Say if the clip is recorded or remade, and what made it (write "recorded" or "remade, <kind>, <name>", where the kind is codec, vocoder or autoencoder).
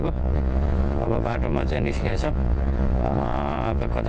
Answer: remade, vocoder, Vocos